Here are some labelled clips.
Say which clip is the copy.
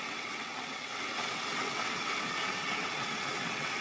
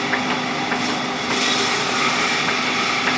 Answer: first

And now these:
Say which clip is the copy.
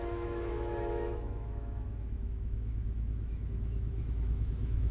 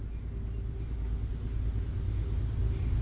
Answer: first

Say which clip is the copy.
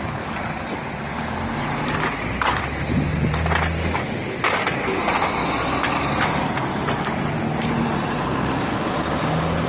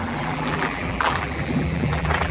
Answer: second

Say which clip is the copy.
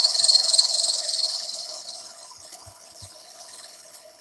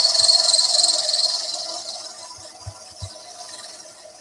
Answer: first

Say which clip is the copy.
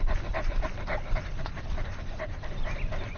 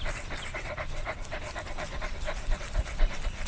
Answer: first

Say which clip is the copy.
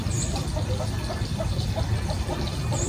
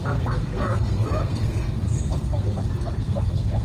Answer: second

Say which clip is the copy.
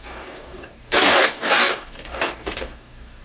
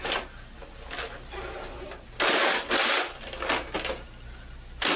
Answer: first